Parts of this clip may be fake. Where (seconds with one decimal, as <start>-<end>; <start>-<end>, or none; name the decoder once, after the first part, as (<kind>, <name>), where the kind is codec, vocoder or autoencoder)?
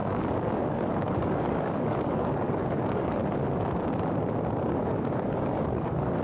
0.0-3.2 (codec, DAC); 4.6-6.2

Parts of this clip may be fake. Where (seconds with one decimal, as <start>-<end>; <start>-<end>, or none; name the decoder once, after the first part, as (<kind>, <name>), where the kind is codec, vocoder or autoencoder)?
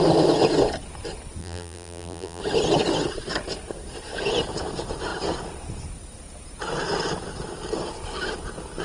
1.4-2.4 (vocoder, BigVGAN v2)